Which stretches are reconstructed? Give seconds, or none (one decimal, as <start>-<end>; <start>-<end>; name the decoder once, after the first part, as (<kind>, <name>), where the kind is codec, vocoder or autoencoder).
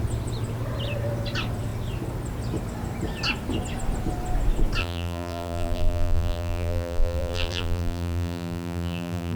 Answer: 4.8-9.4 (vocoder, BigVGAN v2)